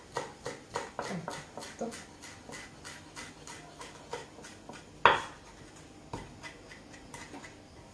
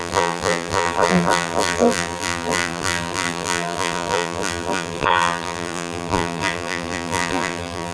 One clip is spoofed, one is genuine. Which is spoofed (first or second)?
second